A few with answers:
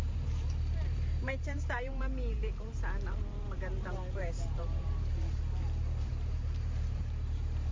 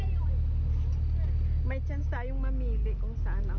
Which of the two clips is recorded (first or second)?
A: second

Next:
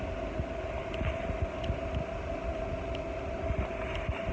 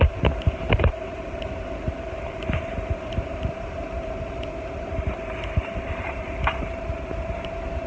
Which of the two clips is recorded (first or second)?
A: first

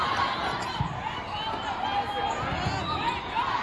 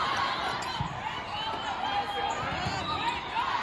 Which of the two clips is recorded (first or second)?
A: first